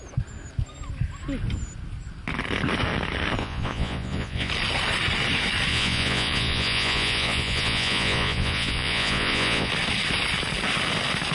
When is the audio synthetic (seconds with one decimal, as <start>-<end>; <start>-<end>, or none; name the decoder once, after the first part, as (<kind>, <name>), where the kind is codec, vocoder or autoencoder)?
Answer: 3.4-4.5 (vocoder, Vocos); 5.7-9.7